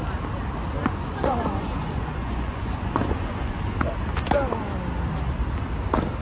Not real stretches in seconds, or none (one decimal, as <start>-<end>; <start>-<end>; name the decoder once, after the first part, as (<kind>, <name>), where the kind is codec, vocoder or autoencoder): 0.8-3.9 (vocoder, Vocos)